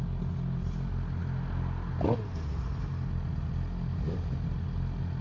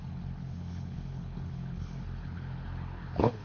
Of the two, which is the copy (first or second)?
second